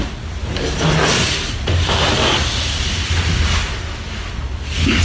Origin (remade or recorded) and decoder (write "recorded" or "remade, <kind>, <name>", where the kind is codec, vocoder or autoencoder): recorded